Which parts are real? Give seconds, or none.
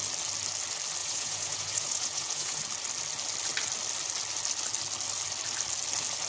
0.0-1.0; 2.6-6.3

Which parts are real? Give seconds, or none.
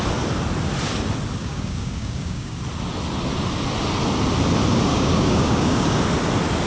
0.0-1.4; 2.6-4.9; 6.0-6.7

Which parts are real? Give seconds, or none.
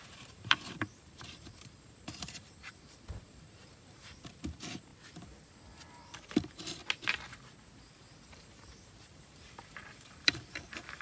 4.9-5.9; 6.8-8.3